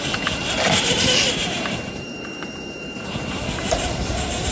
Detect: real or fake fake